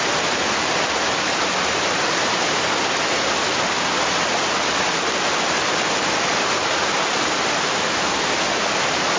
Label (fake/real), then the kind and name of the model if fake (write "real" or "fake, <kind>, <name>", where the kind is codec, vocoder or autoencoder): real